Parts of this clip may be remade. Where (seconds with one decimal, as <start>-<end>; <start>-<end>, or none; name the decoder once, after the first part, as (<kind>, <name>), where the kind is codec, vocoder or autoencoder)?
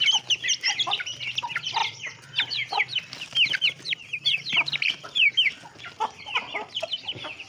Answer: none